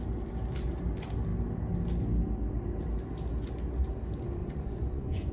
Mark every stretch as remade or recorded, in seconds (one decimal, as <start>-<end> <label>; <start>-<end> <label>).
0.0-4.4 recorded; 4.4-5.3 remade